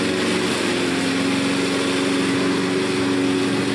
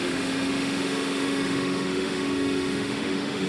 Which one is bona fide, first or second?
first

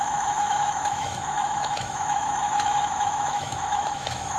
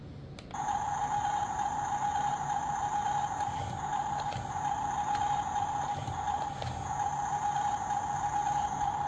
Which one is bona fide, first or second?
second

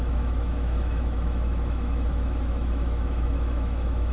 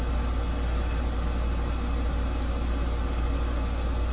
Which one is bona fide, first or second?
second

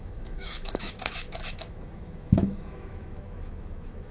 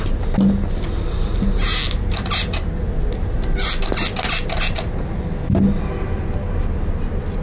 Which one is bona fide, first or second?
second